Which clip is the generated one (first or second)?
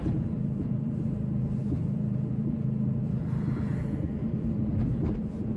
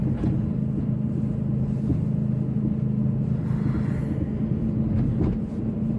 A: first